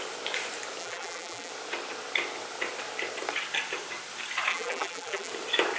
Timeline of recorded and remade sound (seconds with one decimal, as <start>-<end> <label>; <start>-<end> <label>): 0.0-0.8 recorded; 0.8-1.5 remade; 1.5-4.5 recorded; 4.5-5.3 remade; 5.3-5.8 recorded